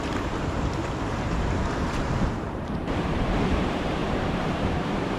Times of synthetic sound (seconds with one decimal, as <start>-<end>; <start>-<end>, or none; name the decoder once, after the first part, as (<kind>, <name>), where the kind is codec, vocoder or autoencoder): 0.0-5.2 (vocoder, BigVGAN v2)